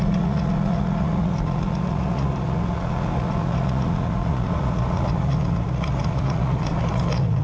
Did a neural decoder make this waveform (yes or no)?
yes